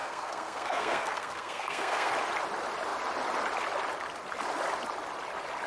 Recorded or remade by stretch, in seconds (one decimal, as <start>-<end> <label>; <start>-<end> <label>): 0.0-2.1 remade; 2.1-5.7 recorded